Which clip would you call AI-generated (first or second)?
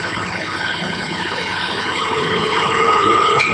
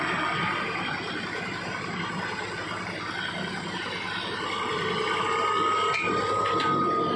first